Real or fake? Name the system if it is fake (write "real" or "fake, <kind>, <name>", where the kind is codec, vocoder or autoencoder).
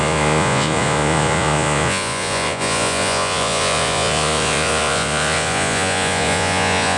fake, vocoder, Vocos